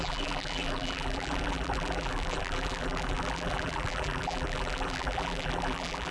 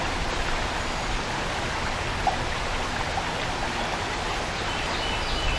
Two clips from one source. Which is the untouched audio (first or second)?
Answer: second